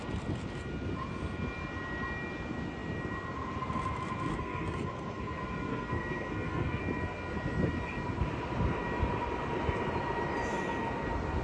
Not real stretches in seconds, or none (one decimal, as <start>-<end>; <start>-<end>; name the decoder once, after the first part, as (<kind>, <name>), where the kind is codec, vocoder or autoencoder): 4.3-5.2 (codec, SNAC); 5.7-6.8